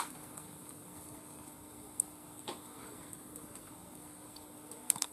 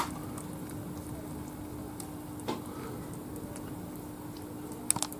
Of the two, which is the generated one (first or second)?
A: first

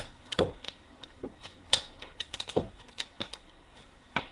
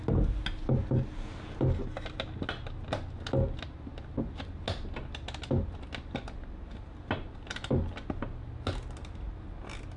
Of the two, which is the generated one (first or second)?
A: first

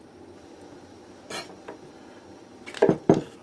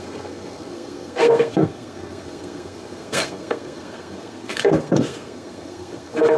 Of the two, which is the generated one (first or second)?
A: second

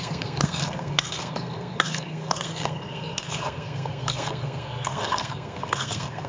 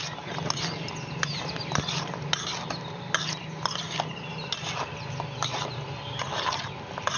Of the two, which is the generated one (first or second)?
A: first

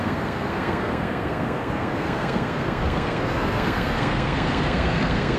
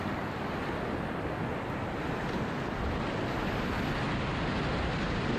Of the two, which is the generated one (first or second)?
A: first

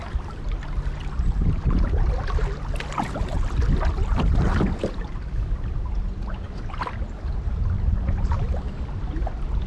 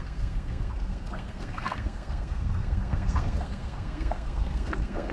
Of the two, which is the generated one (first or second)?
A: second